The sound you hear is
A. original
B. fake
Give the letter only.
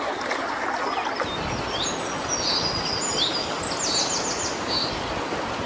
A